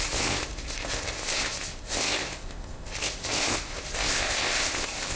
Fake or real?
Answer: fake